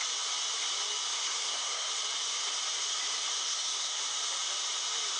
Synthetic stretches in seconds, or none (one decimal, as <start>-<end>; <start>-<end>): 1.1-1.9; 3.4-4.0